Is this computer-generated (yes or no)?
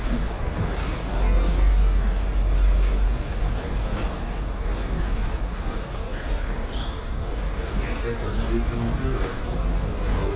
yes